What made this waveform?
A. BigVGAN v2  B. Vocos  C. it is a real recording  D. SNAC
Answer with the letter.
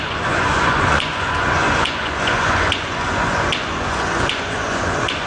B